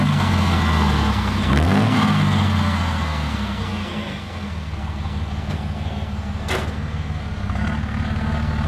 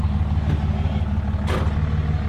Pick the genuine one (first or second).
second